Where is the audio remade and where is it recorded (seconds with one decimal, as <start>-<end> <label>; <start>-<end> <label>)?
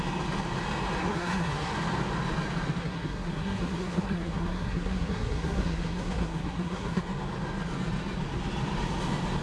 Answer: 0.0-1.0 recorded; 1.0-1.7 remade; 1.7-2.8 recorded; 2.8-7.0 remade; 7.0-9.4 recorded